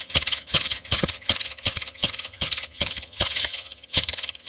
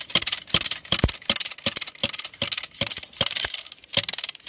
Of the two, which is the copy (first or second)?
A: first